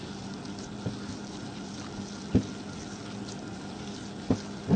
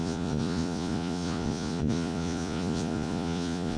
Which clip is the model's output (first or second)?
second